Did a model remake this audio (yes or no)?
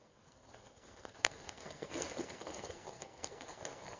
yes